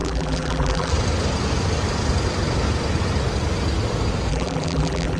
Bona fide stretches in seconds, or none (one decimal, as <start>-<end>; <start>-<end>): 0.9-4.3